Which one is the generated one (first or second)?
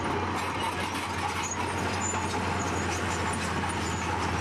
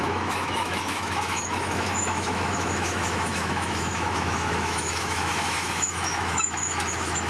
second